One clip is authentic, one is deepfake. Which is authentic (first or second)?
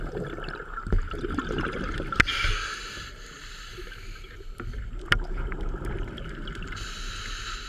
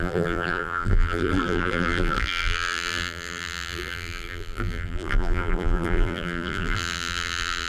first